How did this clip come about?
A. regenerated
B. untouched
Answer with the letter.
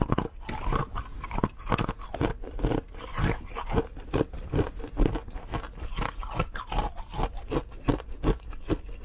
B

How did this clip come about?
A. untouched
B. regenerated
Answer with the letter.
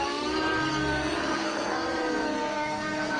B